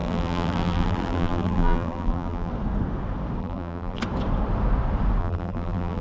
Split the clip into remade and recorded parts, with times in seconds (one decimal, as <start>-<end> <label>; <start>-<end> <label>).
0.0-2.5 remade; 2.5-3.4 recorded; 3.4-4.0 remade; 4.0-5.2 recorded; 5.2-6.0 remade